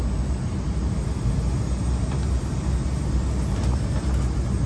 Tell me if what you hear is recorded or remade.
recorded